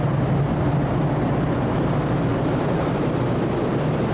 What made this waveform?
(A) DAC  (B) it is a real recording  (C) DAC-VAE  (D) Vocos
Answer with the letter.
B